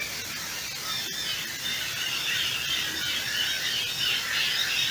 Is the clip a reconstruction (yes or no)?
no